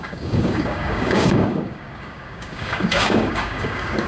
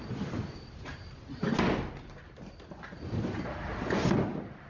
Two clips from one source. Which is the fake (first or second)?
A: first